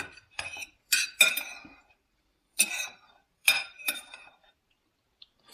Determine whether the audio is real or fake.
fake